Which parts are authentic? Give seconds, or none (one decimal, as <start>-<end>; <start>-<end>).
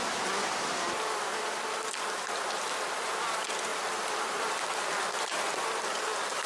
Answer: 0.0-0.4; 2.0-3.7